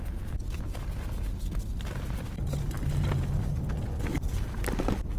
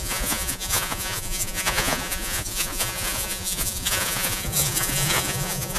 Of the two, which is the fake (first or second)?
second